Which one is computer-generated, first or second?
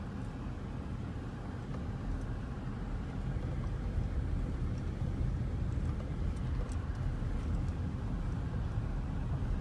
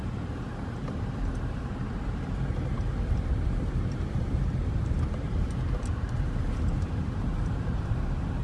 second